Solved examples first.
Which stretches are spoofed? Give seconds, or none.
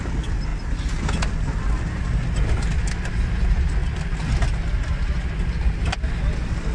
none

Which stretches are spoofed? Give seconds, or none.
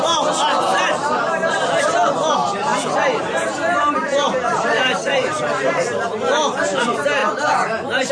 0.0-2.7; 3.9-7.2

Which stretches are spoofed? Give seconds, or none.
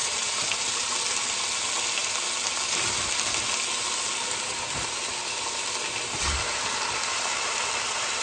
0.0-0.9; 7.1-7.7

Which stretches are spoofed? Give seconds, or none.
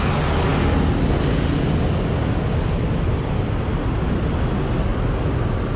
4.9-5.8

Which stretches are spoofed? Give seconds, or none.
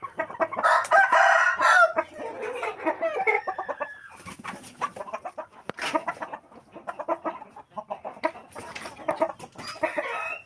none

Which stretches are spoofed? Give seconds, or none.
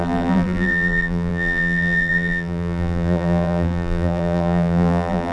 0.0-5.3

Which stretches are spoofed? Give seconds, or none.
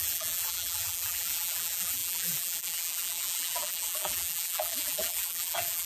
0.0-5.9